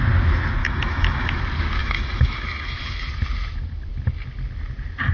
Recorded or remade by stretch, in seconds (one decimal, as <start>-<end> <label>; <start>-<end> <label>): 0.0-0.6 recorded; 0.6-1.4 remade; 1.4-1.8 recorded; 1.8-3.1 remade; 3.1-5.1 recorded